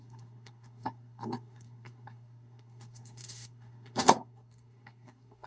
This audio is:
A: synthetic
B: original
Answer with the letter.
A